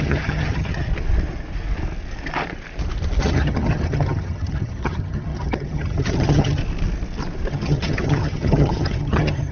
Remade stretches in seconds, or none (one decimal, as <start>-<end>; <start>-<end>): 0.0-0.9; 3.2-6.6; 7.5-9.5